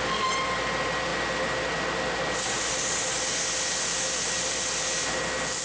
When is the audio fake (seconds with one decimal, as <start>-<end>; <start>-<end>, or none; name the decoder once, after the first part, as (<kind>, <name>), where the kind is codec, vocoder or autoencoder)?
none